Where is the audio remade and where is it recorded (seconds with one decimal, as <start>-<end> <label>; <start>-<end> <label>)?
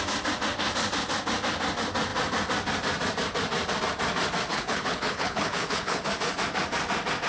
0.0-4.5 recorded; 4.5-6.1 remade; 6.1-7.3 recorded